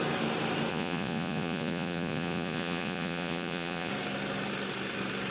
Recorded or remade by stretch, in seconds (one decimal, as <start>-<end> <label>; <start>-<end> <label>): 0.0-0.7 recorded; 0.7-3.9 remade; 3.9-5.3 recorded